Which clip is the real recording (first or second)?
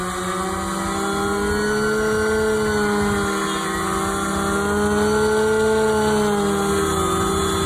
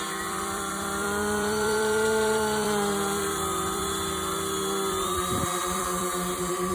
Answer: first